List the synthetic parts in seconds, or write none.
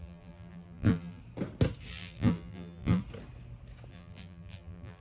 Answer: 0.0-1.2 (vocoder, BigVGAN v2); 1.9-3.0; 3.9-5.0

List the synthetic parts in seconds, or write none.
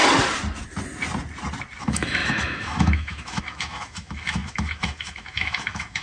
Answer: 1.8-6.0 (autoencoder, DAC-VAE)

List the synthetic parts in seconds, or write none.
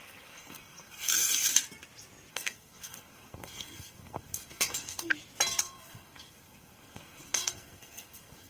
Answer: 0.0-1.5 (codec, SNAC); 2.3-5.1; 5.6-8.5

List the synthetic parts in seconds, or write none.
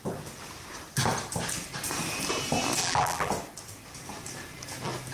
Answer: 2.8-3.3 (vocoder, BigVGAN v2)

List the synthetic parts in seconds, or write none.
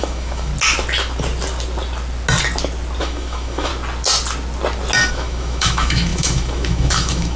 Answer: 0.0-0.5 (autoencoder, DAC-VAE); 3.0-3.7; 5.1-7.4